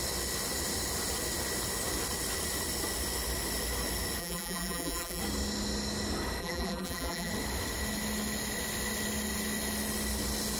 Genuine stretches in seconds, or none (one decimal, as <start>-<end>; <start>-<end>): 0.0-4.2; 5.2-6.4; 7.3-10.6